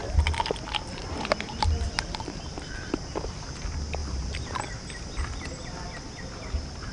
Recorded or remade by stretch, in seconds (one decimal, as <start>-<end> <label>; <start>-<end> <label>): 0.0-3.0 remade; 3.0-4.0 recorded; 4.0-4.6 remade; 4.6-6.9 recorded